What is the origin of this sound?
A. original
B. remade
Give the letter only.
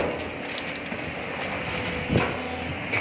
A